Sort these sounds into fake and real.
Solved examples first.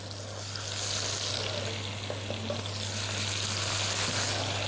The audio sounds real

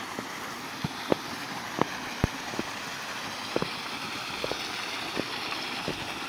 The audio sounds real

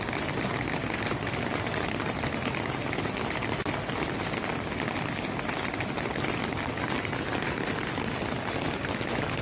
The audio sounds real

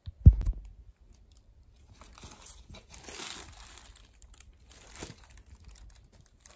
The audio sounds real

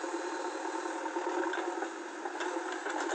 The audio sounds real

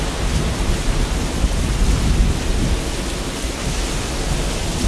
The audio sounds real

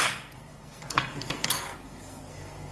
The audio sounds fake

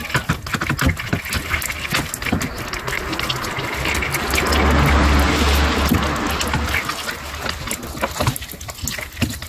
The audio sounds real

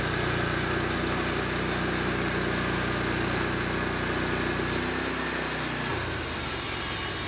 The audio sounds real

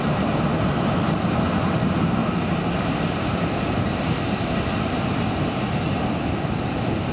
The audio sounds fake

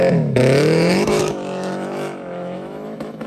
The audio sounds fake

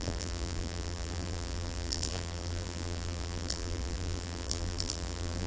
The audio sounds fake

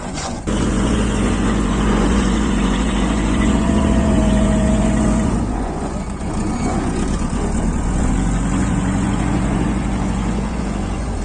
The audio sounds fake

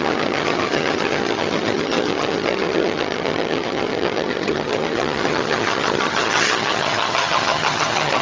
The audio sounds fake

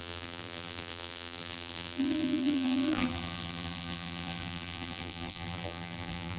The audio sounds fake